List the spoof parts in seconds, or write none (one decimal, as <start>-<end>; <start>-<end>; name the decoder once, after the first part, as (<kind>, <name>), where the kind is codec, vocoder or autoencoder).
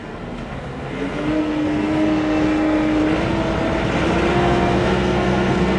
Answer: 0.0-3.0 (codec, SNAC); 4.3-5.8